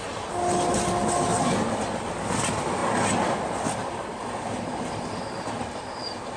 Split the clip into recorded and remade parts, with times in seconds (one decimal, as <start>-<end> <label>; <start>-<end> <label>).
0.0-1.3 recorded; 1.3-2.1 remade; 2.1-6.4 recorded